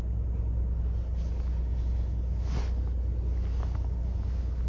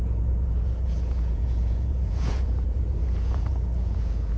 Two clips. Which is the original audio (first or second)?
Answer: first